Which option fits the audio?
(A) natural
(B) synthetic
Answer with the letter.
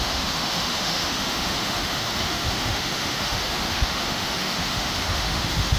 B